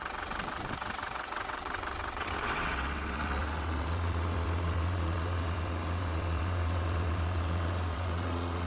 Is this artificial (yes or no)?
yes